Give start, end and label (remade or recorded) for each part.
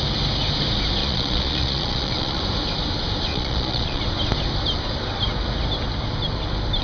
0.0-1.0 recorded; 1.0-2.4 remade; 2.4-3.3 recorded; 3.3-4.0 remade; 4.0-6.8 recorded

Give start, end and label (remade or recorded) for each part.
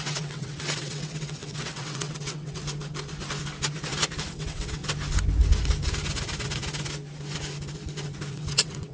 0.0-2.6 remade; 2.6-4.3 recorded; 4.3-4.8 remade; 4.8-8.3 recorded; 8.3-8.9 remade